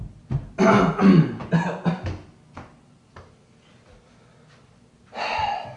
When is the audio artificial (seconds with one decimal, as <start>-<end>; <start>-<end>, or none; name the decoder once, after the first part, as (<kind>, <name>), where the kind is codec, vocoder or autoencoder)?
none